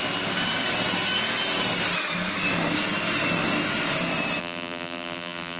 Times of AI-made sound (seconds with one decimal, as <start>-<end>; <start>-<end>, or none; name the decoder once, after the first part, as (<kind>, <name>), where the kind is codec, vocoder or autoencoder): 4.4-5.6 (vocoder, BigVGAN v2)